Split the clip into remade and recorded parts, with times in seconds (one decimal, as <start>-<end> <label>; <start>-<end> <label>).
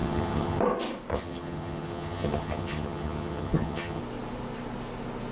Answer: 0.0-0.6 remade; 0.6-1.1 recorded; 1.1-4.0 remade; 4.0-5.3 recorded